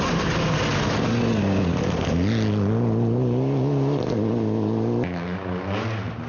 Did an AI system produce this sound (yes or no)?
no